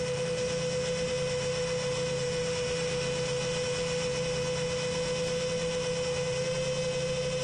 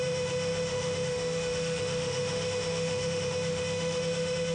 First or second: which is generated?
second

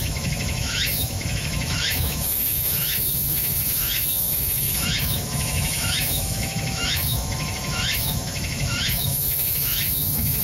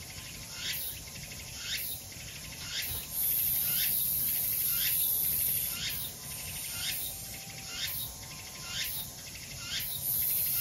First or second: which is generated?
first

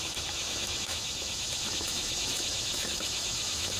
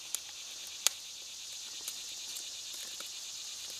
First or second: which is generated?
first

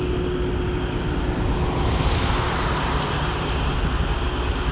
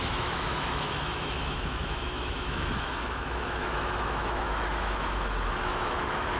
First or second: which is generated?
second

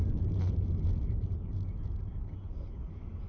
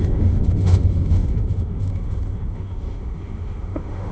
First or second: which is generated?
second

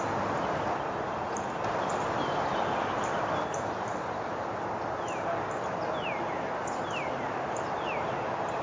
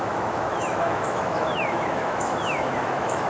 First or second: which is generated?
second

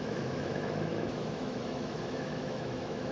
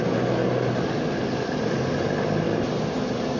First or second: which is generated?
first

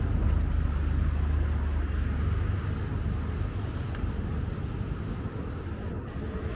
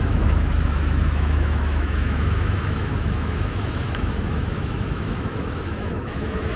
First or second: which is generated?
second